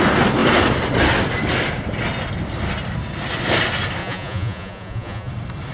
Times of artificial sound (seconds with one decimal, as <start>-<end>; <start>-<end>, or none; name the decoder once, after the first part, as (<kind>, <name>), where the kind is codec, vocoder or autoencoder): 4.0-5.3 (vocoder, Vocos)